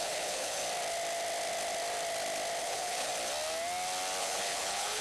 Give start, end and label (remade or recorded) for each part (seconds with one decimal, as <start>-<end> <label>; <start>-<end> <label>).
0.0-0.6 remade; 0.6-2.6 recorded; 2.6-3.1 remade; 3.1-4.2 recorded; 4.2-5.0 remade